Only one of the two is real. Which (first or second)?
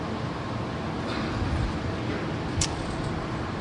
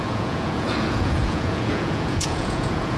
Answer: first